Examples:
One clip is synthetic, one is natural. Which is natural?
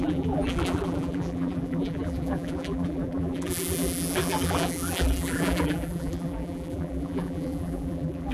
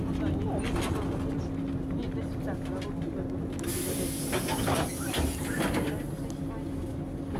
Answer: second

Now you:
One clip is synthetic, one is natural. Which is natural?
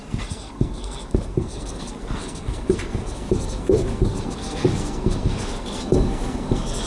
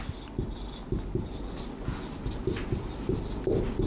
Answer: second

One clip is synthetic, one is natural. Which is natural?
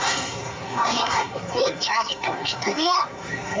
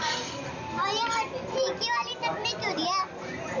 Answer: second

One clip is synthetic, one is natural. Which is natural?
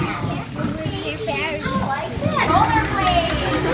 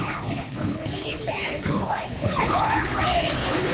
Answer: first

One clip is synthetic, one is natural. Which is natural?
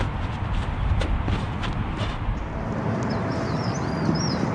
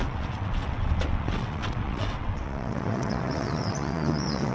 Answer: first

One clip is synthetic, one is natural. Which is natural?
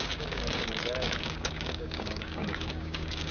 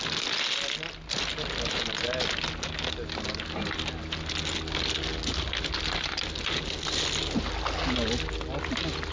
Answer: second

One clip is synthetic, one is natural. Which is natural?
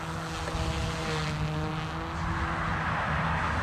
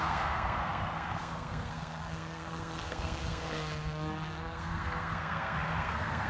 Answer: first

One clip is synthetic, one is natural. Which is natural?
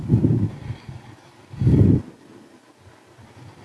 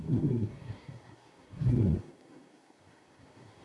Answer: first